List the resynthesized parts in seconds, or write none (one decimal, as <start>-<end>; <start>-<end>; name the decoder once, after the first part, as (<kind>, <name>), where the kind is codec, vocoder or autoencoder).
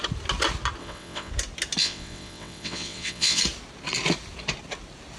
0.8-1.3 (vocoder, WaveNeXt); 1.8-3.4